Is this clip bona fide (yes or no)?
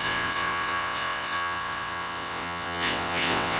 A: no